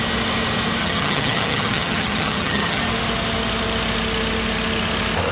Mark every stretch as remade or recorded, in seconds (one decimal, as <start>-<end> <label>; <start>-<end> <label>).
0.0-0.8 recorded; 0.8-2.8 remade; 2.8-5.3 recorded